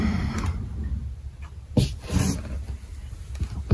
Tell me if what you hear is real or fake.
real